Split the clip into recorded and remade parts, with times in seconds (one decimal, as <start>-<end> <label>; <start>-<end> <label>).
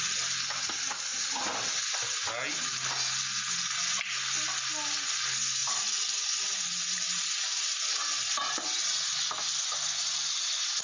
0.0-10.8 recorded